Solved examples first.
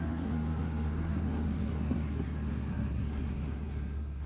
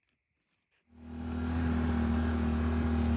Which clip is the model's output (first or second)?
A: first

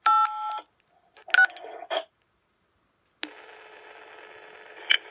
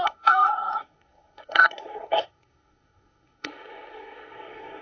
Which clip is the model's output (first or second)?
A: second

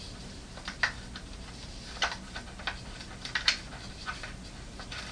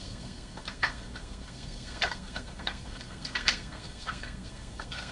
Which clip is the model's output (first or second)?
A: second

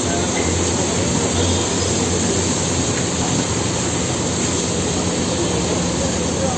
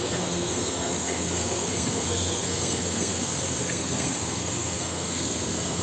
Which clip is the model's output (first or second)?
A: second